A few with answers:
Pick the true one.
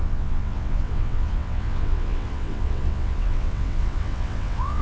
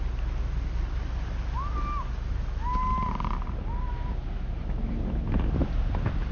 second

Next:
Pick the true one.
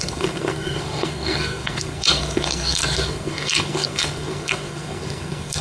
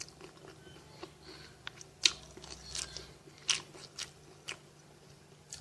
second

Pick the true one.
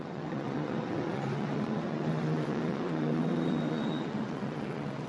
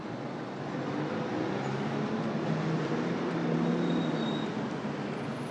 second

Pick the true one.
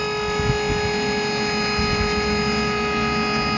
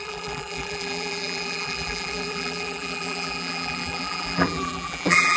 first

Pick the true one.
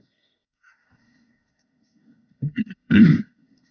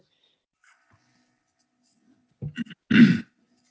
second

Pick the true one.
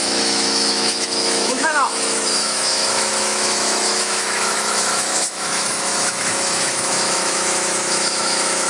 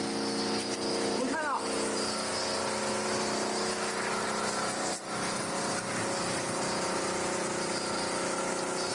second